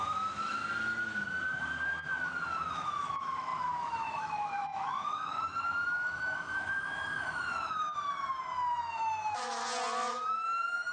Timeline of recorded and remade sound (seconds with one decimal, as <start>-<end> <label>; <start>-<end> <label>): 0.0-0.6 remade; 0.6-2.7 recorded; 2.7-9.6 remade; 9.6-10.3 recorded; 10.3-10.9 remade